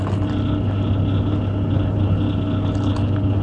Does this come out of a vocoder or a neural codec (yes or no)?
no